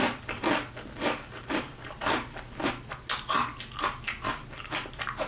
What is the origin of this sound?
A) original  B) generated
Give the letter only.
A